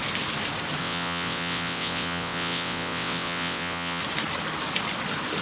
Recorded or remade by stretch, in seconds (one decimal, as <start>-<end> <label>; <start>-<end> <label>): 0.0-0.8 recorded; 0.8-4.0 remade; 4.0-5.4 recorded